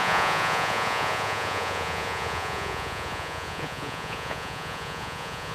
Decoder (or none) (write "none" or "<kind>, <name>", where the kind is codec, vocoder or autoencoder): vocoder, Vocos